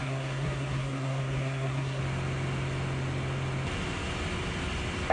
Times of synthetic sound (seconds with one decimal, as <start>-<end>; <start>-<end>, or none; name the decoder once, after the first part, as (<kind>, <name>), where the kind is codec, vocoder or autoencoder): 0.0-2.0 (codec, SNAC)